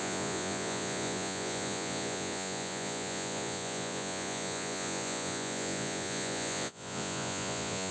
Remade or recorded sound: remade